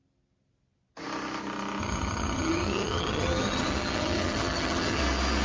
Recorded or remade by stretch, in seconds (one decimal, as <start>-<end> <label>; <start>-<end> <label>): 0.0-1.8 recorded; 1.8-5.0 remade; 5.0-5.4 recorded